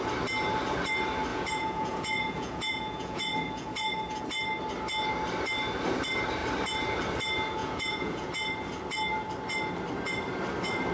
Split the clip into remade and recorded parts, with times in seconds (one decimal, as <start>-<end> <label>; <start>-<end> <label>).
0.0-1.3 recorded; 1.3-4.2 remade; 4.2-7.6 recorded; 7.6-8.3 remade; 8.3-10.9 recorded